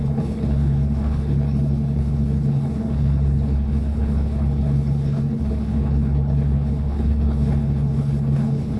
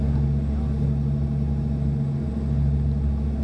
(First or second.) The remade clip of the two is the first